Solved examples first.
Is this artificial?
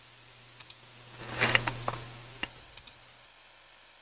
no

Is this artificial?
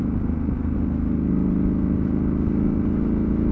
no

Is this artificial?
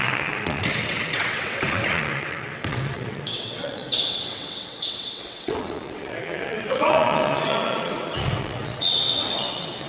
yes